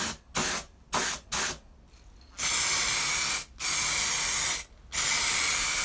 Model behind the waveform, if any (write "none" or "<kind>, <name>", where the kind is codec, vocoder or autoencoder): none